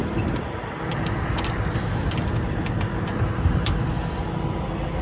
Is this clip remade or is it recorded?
remade